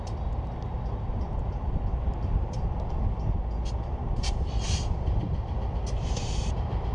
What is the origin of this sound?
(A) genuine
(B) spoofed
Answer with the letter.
B